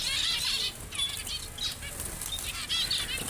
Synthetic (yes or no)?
no